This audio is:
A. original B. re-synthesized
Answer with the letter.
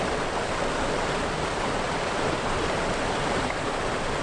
A